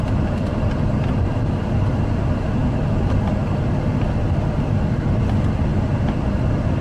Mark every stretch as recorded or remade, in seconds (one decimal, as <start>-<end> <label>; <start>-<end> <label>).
0.0-6.8 recorded